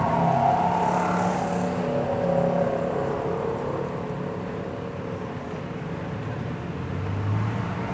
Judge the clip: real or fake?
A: real